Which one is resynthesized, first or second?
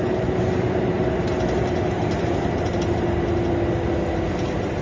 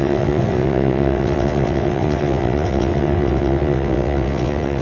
second